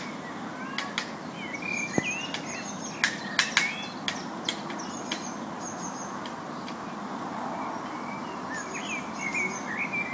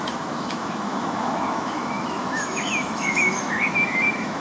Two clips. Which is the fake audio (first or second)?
second